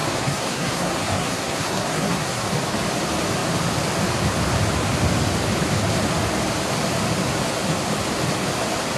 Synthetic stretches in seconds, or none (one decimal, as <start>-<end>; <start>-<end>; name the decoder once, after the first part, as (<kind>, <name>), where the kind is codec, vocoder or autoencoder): 0.0-2.5 (codec, SNAC)